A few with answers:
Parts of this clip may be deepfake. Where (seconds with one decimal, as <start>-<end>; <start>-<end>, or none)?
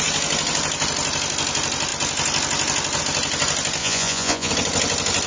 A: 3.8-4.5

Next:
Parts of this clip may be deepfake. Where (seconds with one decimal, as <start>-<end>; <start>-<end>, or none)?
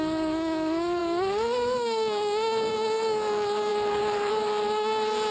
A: 0.0-5.3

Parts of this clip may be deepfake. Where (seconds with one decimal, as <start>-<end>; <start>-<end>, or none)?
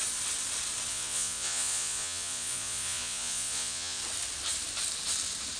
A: 0.9-4.0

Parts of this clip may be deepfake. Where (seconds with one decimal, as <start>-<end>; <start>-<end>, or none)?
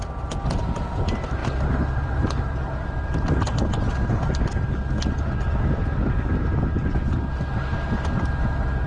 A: none